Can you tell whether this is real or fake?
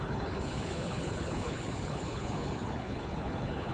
fake